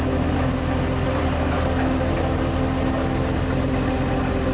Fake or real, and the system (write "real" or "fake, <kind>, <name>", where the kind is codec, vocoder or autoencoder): real